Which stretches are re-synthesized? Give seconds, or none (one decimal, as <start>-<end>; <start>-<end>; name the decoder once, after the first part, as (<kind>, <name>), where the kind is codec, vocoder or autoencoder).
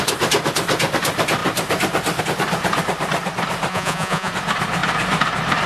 3.7-4.3 (vocoder, Vocos)